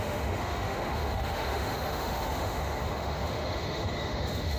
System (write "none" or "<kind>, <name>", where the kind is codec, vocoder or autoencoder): autoencoder, DAC-VAE